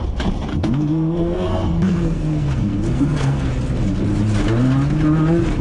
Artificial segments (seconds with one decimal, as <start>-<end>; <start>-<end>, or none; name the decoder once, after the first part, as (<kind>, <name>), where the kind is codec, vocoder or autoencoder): 0.5-3.5 (codec, SNAC)